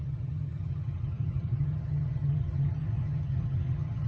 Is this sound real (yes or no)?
no